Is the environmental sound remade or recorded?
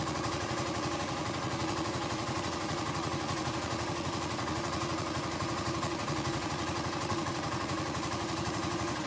remade